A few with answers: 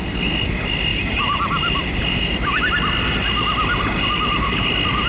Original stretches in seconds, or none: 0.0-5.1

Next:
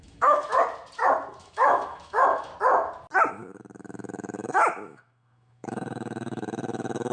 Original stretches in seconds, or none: 0.5-1.3; 2.5-3.3

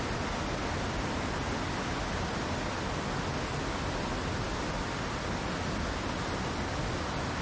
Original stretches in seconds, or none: 0.0-7.4

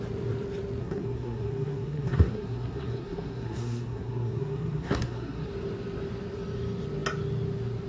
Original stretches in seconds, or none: 0.0-0.8; 5.5-7.9

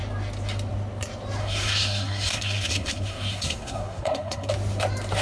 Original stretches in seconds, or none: 0.0-1.4; 4.5-5.2

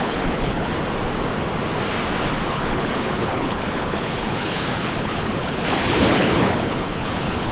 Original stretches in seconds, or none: 0.7-2.5

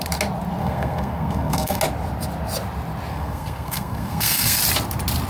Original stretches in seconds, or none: 0.0-0.6; 1.8-3.1; 4.6-5.3